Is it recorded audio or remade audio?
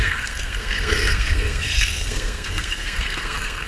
remade